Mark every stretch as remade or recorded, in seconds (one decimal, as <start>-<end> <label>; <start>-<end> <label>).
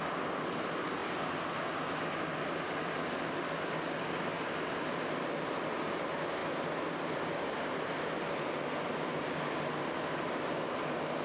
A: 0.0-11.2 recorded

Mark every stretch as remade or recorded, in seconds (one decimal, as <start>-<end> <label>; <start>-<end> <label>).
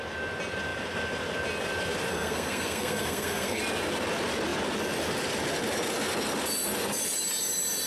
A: 0.0-2.1 recorded; 2.1-3.6 remade; 3.6-7.9 recorded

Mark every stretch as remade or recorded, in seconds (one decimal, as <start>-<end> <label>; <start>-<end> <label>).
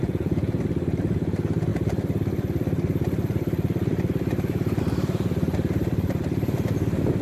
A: 0.0-0.6 remade; 0.6-7.2 recorded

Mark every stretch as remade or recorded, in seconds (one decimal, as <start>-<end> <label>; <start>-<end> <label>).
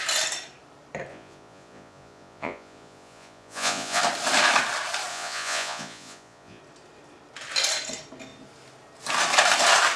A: 0.0-1.1 recorded; 1.1-4.0 remade; 4.0-5.1 recorded; 5.1-6.6 remade; 6.6-10.0 recorded